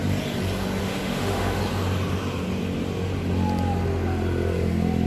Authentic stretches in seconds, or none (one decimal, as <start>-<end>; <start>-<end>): 0.0-0.8; 1.6-5.1